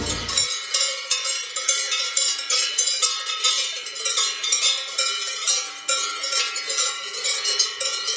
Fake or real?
fake